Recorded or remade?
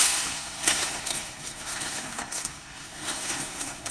remade